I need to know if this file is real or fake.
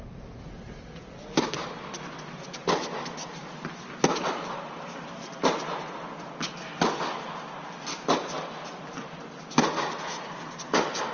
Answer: real